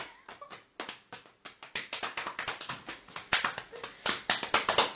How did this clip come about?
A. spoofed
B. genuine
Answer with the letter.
B